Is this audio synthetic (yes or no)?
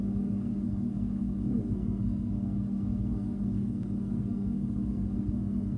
yes